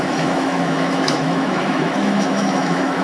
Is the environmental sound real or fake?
fake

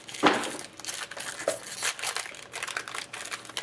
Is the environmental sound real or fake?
real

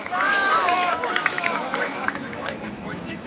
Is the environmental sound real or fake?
fake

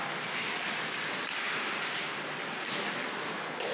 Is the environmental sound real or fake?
real